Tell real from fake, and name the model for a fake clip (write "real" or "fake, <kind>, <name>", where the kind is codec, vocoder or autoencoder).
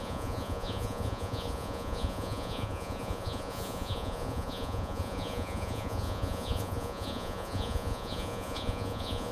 fake, vocoder, Vocos